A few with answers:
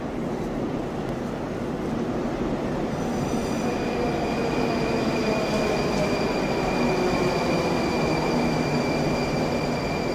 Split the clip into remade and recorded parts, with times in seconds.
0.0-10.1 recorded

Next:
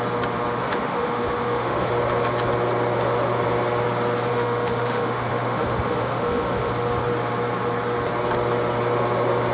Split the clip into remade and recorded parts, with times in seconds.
0.0-0.6 recorded; 0.6-1.9 remade; 1.9-4.3 recorded; 4.3-6.7 remade; 6.7-9.5 recorded

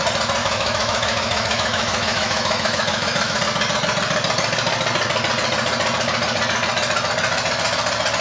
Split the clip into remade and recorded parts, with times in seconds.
0.0-0.4 recorded; 0.4-3.4 remade; 3.4-8.2 recorded

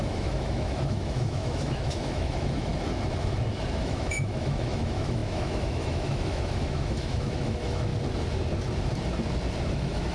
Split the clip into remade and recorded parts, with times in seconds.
0.0-2.7 remade; 2.7-3.8 recorded; 3.8-7.9 remade; 7.9-9.7 recorded; 9.7-10.1 remade